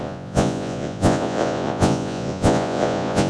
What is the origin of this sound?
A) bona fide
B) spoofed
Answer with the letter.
B